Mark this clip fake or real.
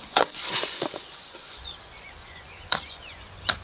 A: fake